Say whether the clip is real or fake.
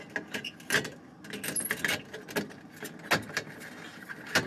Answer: real